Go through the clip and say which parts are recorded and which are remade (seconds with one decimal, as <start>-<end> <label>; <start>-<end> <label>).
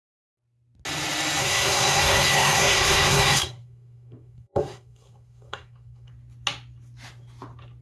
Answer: 0.0-1.4 recorded; 1.4-6.1 remade; 6.1-7.8 recorded